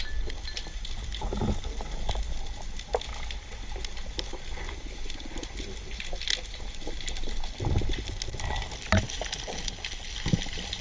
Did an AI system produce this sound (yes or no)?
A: no